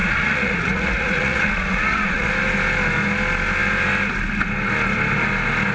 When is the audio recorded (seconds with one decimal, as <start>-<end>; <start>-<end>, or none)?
2.3-5.7